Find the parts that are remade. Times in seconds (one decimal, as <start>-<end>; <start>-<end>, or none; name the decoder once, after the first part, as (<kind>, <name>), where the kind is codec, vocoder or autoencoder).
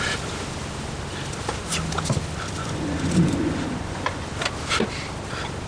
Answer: 2.6-4.3 (vocoder, Vocos)